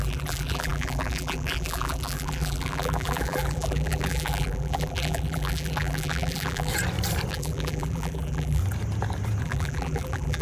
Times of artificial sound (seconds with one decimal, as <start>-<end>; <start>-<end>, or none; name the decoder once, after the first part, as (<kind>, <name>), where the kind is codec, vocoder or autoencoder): 0.0-6.7 (vocoder, BigVGAN v2); 7.3-8.6; 9.4-10.4